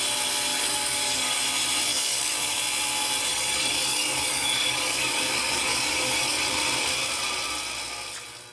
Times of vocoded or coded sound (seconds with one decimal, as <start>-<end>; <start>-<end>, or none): 0.5-1.4; 1.9-2.6; 3.3-6.4

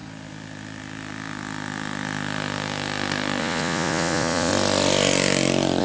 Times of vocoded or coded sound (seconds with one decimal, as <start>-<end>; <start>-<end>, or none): 3.4-4.5

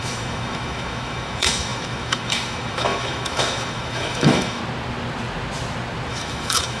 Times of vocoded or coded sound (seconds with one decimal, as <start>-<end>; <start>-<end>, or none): 0.0-4.6; 6.1-6.8

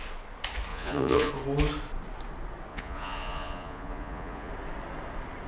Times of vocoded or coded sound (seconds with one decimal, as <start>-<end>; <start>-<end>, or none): 0.7-1.3; 2.7-4.5